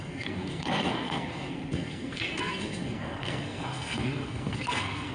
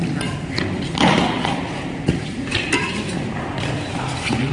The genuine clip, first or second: second